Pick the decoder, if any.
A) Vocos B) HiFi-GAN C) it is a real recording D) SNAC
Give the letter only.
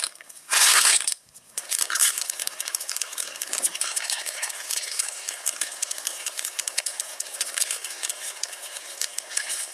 D